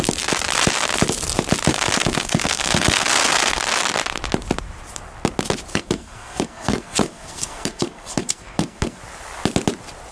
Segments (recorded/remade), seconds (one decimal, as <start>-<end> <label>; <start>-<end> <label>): 0.0-1.7 recorded; 1.7-3.6 remade; 3.6-5.7 recorded; 5.7-9.0 remade; 9.0-10.1 recorded